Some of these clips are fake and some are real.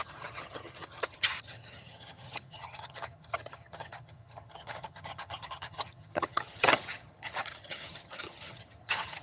fake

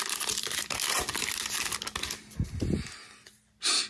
real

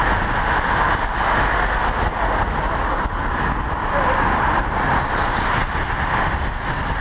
real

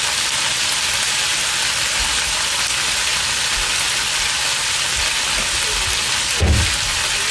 real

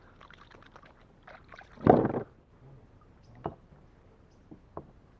real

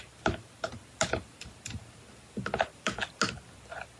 real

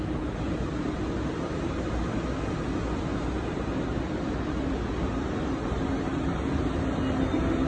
real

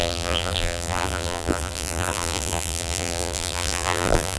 fake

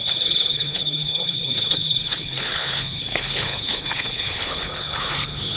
fake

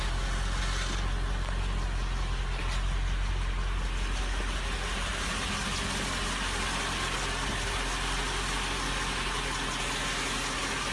real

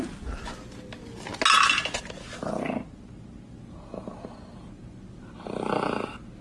real